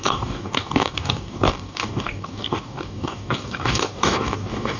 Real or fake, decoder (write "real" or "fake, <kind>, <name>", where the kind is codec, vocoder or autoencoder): fake, codec, DAC